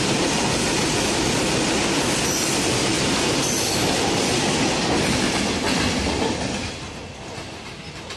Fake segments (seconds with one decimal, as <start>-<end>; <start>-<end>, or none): none